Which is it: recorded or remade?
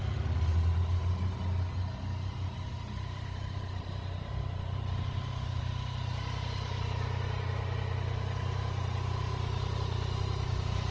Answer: recorded